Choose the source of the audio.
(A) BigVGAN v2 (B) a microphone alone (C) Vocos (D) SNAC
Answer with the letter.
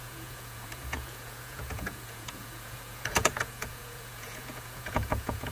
C